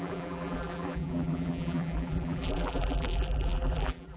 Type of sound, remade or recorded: remade